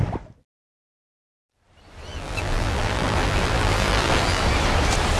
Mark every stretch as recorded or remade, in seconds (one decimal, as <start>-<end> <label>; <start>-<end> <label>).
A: 0.0-2.1 recorded; 2.1-4.4 remade; 4.4-5.2 recorded